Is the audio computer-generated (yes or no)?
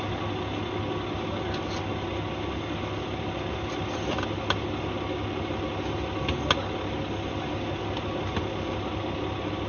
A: no